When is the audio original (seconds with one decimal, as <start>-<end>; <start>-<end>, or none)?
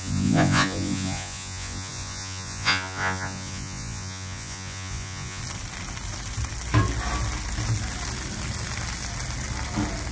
5.4-10.1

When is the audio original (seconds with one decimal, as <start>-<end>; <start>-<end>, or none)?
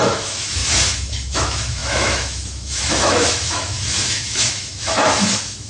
none